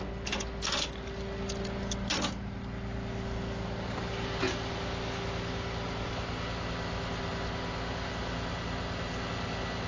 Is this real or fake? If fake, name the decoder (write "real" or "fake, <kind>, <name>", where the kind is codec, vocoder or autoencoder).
real